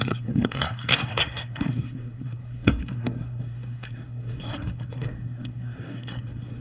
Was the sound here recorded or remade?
remade